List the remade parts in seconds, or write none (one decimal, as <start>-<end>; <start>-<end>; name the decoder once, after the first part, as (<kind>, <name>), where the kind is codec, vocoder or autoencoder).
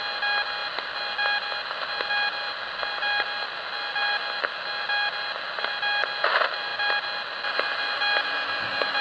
none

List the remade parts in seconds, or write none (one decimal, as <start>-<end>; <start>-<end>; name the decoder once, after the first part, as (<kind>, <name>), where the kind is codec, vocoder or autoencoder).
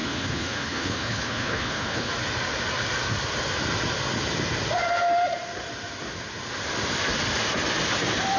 0.0-2.1 (codec, HILCodec)